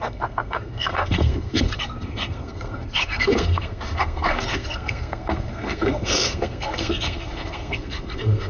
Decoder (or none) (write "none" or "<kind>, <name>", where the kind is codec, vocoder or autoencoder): codec, SNAC